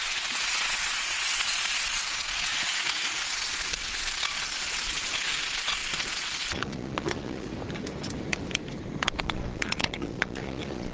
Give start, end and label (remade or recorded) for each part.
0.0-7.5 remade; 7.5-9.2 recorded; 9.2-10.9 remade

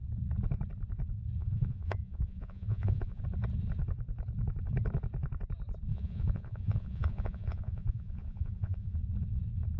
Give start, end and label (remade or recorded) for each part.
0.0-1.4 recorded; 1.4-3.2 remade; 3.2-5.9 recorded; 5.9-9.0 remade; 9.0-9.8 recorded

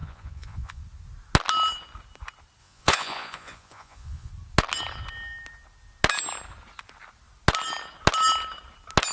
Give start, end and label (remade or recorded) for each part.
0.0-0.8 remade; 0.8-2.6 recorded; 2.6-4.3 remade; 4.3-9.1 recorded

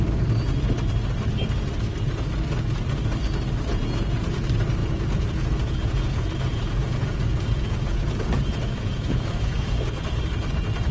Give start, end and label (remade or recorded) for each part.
0.0-3.7 recorded; 3.7-4.3 remade; 4.3-4.8 recorded; 4.8-10.0 remade; 10.0-10.9 recorded

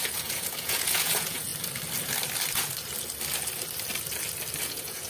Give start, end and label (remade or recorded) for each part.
0.0-1.5 remade; 1.5-4.6 recorded; 4.6-5.1 remade